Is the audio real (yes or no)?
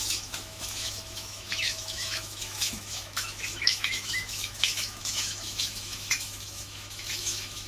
no